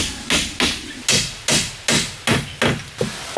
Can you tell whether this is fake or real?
real